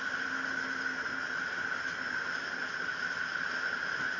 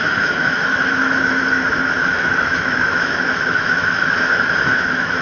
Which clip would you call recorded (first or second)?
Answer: first